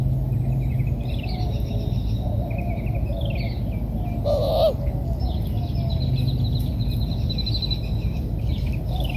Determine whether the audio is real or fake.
real